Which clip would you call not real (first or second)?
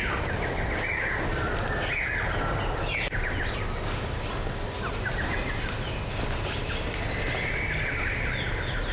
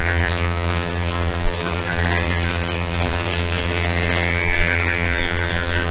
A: second